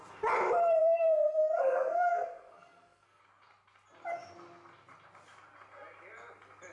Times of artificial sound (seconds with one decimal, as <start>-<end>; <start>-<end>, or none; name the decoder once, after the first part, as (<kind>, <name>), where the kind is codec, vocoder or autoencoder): 0.8-3.2 (codec, SNAC)